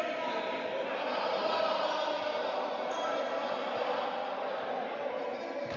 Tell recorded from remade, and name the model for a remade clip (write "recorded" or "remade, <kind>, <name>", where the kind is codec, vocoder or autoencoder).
recorded